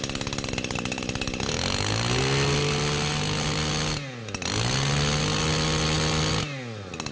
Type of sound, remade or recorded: recorded